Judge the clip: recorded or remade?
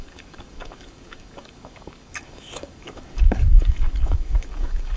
remade